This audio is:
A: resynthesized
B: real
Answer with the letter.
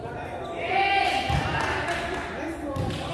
B